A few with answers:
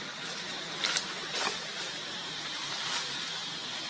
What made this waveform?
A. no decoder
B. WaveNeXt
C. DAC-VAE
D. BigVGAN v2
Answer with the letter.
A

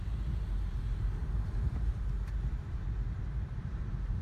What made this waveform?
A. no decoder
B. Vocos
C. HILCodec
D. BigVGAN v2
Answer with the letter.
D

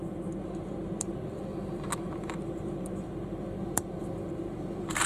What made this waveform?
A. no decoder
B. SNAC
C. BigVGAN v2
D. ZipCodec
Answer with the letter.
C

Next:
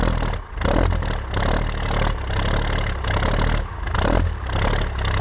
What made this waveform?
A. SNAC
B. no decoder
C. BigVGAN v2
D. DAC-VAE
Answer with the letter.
B